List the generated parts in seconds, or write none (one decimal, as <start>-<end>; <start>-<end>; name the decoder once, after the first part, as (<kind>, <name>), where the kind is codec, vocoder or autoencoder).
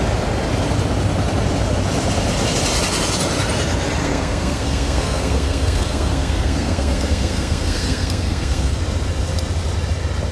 4.0-8.8 (codec, SNAC)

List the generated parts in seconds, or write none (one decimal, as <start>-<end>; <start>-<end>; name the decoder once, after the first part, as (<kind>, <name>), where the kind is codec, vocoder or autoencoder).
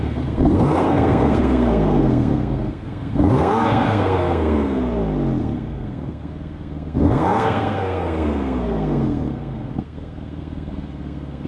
0.0-4.8 (codec, SNAC); 5.4-11.5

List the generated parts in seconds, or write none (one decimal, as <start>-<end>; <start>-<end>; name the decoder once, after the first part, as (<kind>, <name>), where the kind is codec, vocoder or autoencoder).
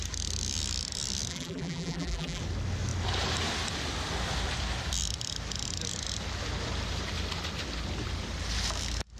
1.3-2.4 (vocoder, BigVGAN v2)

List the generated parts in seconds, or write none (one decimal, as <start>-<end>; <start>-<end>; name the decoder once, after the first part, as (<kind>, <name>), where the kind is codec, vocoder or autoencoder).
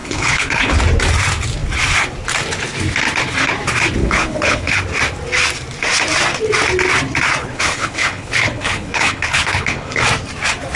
0.0-0.8 (codec, HILCodec); 4.0-4.8; 7.4-10.0